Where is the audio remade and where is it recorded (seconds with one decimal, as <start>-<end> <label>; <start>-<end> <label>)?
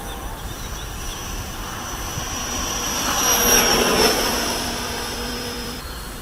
0.0-3.7 recorded; 3.7-6.2 remade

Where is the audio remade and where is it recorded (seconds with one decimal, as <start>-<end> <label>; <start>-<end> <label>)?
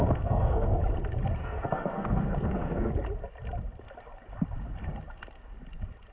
0.0-0.8 remade; 0.8-1.4 recorded; 1.4-2.9 remade; 2.9-6.1 recorded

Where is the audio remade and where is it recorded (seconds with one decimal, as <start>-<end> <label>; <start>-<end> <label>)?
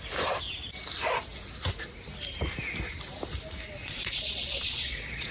0.0-3.8 recorded; 3.8-5.3 remade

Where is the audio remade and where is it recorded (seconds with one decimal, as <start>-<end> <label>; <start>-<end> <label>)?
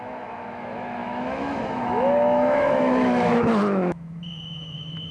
0.0-5.1 remade